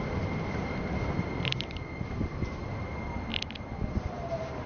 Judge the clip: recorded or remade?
remade